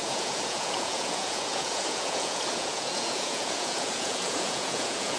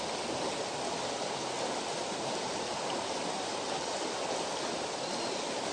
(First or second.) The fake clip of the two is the first